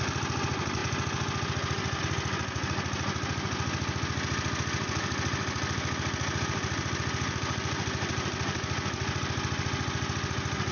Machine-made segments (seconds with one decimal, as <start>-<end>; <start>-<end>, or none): none